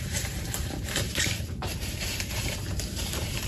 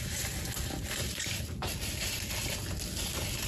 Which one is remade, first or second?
first